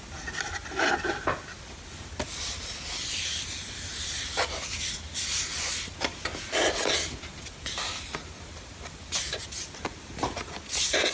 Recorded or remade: recorded